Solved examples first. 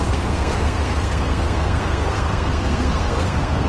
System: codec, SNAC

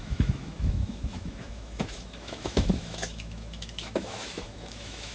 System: autoencoder, DAC-VAE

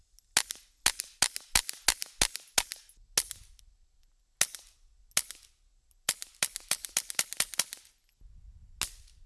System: none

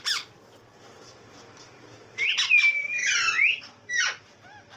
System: none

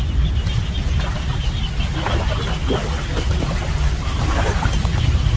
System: none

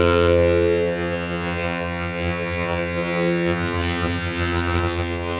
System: vocoder, HiFi-GAN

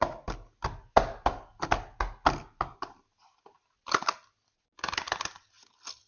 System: none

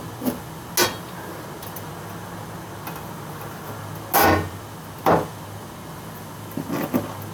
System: none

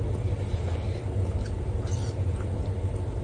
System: none